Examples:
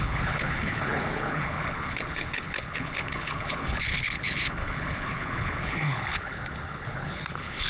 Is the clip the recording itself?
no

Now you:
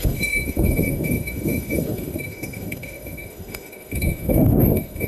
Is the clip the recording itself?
no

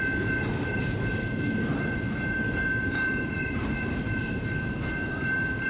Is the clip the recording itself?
no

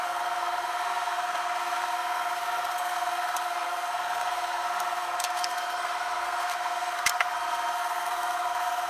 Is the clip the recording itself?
no